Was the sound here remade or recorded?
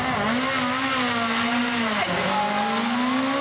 recorded